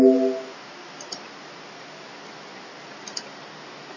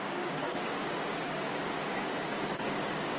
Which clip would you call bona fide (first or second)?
first